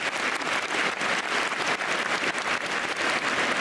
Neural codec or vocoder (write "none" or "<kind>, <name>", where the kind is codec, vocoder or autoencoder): none